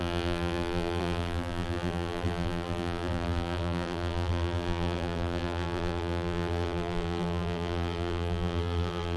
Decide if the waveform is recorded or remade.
remade